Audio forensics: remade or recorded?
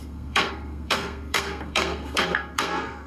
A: remade